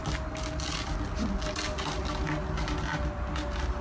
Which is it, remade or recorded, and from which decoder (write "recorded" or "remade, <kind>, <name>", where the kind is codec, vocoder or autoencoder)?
recorded